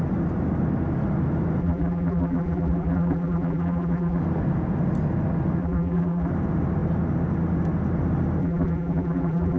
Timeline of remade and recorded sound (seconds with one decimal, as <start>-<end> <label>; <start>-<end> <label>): 0.0-1.6 recorded; 1.6-4.2 remade; 4.2-5.6 recorded; 5.6-6.3 remade; 6.3-8.4 recorded; 8.4-9.6 remade